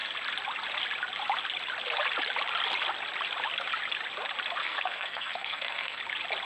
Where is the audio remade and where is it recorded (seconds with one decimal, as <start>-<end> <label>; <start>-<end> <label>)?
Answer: 0.0-4.6 recorded; 4.6-6.0 remade; 6.0-6.4 recorded